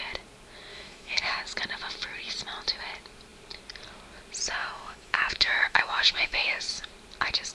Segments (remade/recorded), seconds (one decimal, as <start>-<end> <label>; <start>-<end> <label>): 0.0-0.7 recorded; 0.7-1.4 remade; 1.4-4.6 recorded; 4.6-6.9 remade; 6.9-7.5 recorded